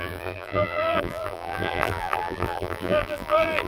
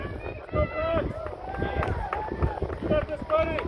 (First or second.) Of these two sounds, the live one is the second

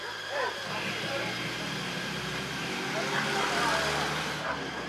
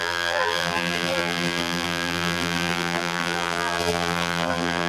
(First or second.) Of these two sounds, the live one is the first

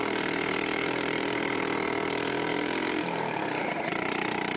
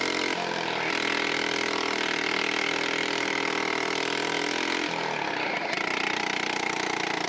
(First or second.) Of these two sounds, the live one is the second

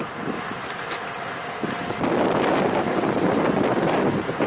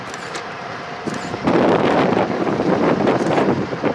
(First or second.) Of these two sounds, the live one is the first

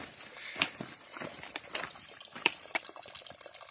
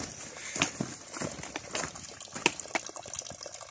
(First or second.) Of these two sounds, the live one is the second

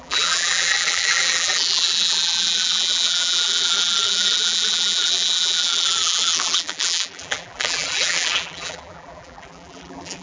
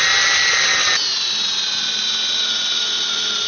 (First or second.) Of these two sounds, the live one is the second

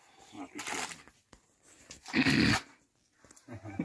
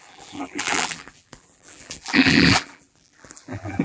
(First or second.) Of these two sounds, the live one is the first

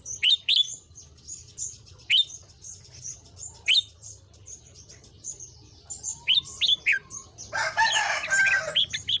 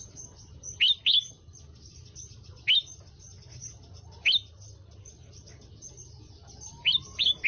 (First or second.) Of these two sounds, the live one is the second